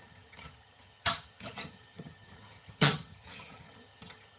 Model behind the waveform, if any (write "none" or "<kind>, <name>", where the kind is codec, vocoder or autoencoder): vocoder, HiFi-GAN